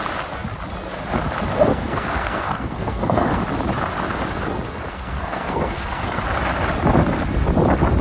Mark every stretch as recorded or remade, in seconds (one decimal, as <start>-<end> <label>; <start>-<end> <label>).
0.0-1.7 recorded; 1.7-3.4 remade; 3.4-4.9 recorded; 4.9-6.2 remade; 6.2-8.0 recorded